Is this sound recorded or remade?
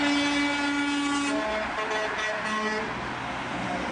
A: recorded